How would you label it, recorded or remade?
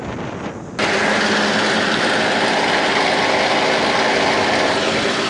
recorded